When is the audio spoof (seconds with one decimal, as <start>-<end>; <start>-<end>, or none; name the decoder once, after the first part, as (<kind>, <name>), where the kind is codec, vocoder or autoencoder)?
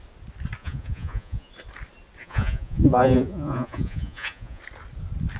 0.6-1.5 (vocoder, Vocos); 2.2-4.6